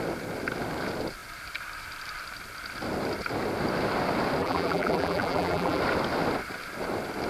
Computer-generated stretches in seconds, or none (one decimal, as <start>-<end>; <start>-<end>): 4.4-5.8